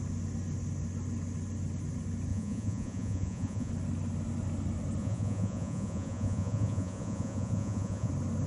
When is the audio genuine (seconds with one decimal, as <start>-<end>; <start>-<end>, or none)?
0.0-2.3; 3.7-5.0; 8.1-8.5